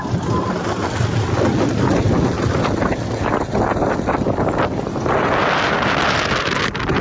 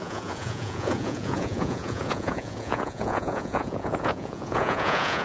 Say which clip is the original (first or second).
first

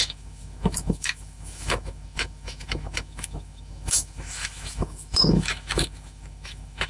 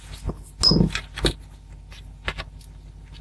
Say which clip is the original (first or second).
second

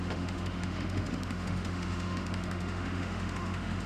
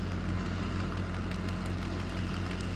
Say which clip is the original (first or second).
second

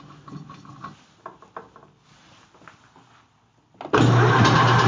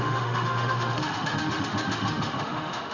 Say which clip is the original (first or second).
first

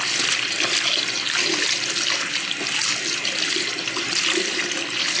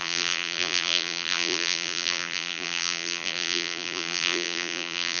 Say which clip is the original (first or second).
first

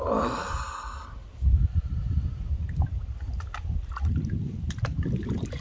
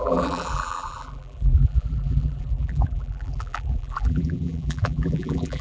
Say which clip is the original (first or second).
first